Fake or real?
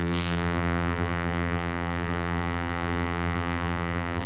fake